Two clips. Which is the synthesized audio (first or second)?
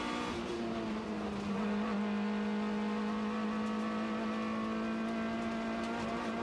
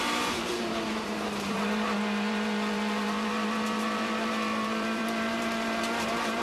second